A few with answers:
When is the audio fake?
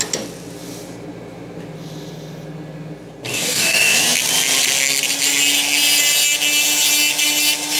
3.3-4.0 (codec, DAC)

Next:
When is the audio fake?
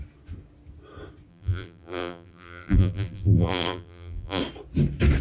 1.3-4.4 (vocoder, BigVGAN v2)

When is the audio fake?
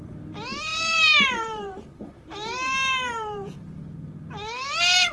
0.7-3.8 (vocoder, BigVGAN v2)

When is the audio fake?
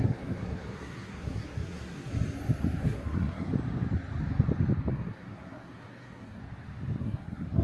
0.0-2.1 (codec, SNAC); 2.8-3.5; 4.9-6.4; 7.0-7.6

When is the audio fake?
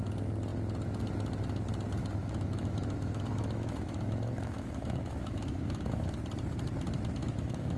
2.0-6.1 (autoencoder, DAC-VAE); 7.2-7.8